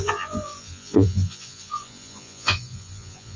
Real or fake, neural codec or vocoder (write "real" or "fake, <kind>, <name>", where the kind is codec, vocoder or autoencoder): fake, vocoder, Vocos